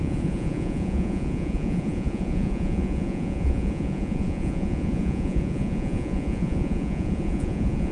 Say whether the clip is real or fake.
fake